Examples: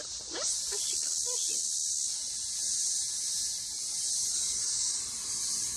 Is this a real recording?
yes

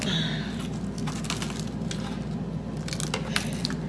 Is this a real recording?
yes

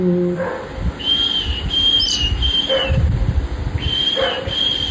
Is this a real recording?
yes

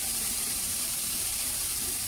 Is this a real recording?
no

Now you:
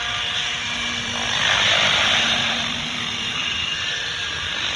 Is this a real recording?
no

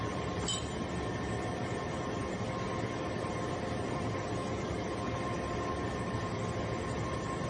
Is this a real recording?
yes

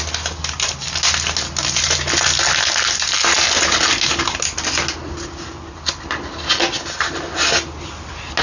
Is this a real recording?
yes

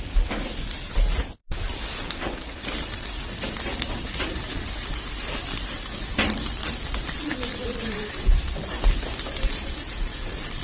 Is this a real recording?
no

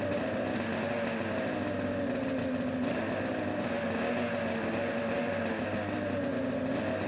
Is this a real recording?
yes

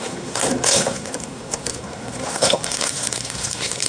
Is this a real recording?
no